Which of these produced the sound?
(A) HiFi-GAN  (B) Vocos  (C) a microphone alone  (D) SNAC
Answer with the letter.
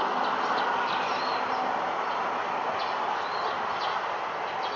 C